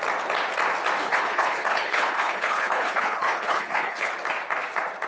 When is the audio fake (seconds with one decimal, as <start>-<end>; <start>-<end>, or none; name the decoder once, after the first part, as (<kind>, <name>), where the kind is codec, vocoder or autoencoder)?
1.0-4.1 (codec, HILCodec)